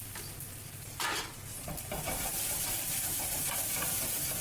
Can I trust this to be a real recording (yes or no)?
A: no